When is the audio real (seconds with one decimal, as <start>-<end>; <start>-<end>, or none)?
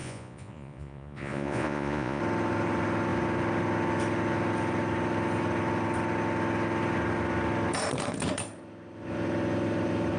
2.2-10.2